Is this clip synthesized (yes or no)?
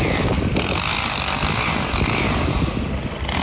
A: no